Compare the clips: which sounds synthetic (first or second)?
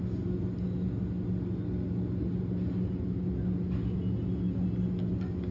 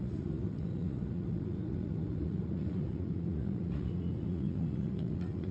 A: second